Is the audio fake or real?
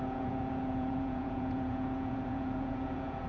fake